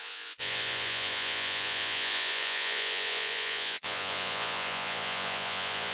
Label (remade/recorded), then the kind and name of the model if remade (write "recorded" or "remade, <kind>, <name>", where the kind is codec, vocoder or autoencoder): remade, vocoder, Vocos